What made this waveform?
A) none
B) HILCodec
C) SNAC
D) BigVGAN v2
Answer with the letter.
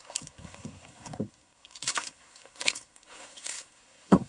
C